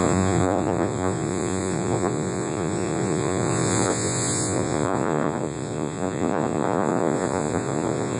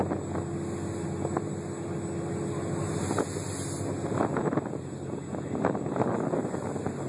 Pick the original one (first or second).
second